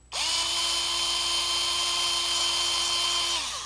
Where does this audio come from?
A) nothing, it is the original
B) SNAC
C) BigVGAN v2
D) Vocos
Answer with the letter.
A